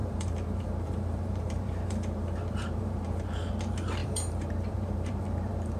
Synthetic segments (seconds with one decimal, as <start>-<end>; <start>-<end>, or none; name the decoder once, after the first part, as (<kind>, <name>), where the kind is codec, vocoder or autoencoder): 0.0-3.5 (vocoder, BigVGAN v2); 4.0-5.8